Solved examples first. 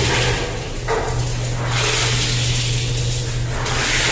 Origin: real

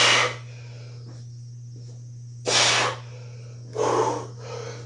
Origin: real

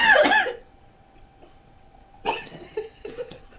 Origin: fake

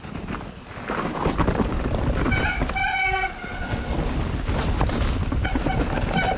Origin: real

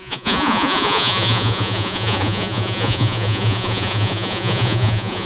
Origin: fake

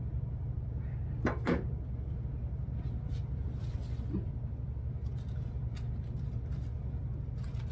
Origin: real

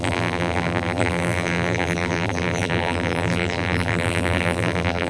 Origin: fake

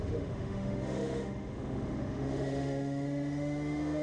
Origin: fake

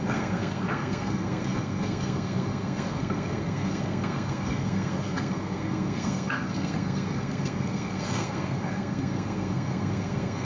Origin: fake